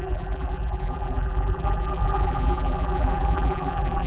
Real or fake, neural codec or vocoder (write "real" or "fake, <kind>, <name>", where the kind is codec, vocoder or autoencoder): fake, vocoder, BigVGAN v2